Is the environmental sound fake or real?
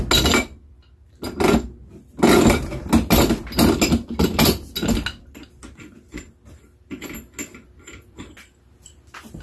real